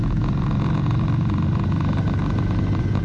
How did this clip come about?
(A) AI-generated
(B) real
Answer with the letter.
B